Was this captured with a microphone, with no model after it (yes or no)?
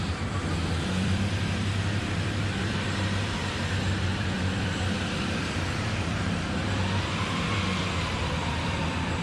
no